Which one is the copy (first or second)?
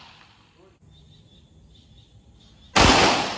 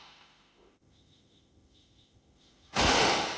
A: second